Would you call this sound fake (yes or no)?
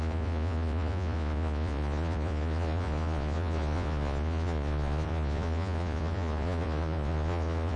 yes